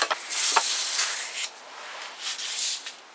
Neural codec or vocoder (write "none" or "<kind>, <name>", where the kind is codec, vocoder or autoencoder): none